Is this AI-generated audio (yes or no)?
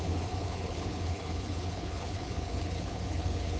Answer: yes